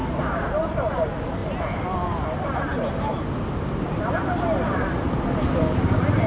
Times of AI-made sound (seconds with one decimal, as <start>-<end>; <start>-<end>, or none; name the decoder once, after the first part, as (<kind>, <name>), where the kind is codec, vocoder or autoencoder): none